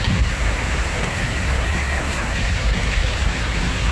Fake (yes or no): yes